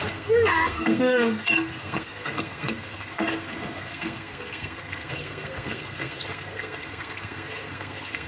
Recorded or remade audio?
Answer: remade